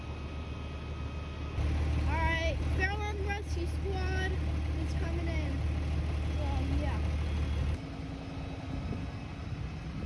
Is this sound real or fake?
real